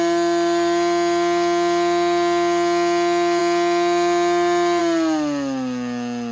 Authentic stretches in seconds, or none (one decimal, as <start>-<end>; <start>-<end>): 0.0-6.3

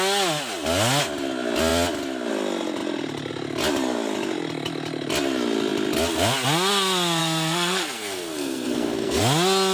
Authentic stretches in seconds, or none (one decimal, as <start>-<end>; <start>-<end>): 0.0-7.2; 9.2-9.7

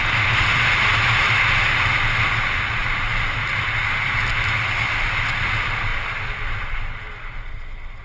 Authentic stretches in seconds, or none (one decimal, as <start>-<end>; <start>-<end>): 0.0-8.0

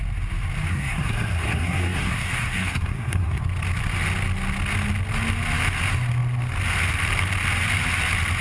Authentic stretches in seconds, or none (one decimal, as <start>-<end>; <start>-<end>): 0.0-0.7; 3.4-8.4

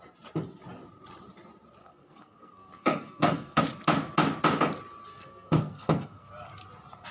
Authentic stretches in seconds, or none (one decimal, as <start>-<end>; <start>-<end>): 0.0-1.8; 3.6-5.1; 6.3-7.1

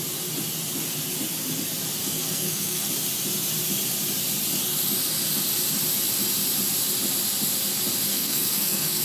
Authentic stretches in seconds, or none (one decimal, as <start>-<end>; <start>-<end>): 0.0-2.0; 2.9-8.1

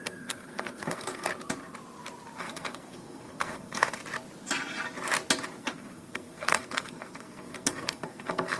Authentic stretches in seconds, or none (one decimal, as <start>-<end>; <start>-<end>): 1.3-2.4; 4.0-5.6